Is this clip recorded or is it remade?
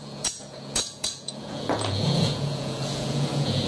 remade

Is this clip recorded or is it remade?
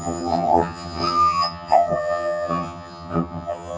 remade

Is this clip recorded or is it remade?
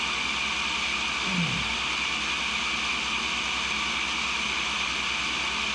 recorded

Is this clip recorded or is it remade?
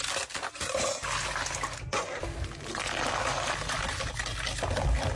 recorded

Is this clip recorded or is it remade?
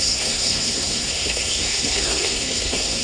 remade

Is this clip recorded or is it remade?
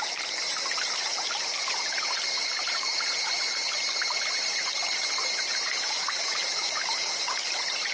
remade